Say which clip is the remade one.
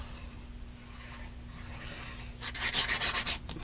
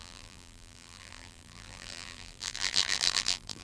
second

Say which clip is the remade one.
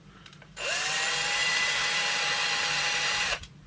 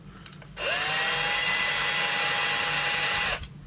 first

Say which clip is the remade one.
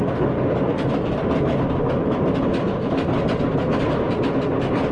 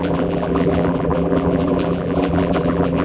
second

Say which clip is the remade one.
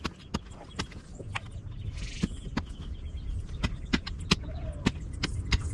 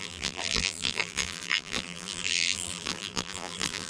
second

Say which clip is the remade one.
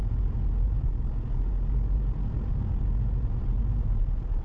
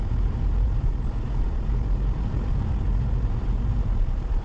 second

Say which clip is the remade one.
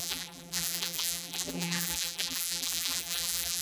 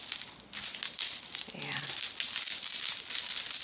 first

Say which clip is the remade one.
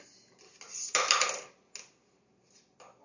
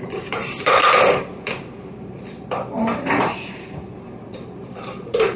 second